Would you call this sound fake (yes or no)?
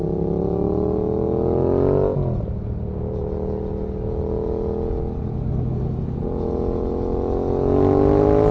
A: no